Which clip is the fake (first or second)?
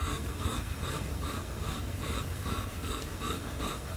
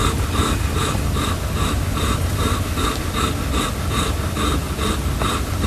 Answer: first